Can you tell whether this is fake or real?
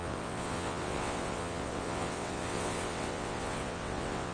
fake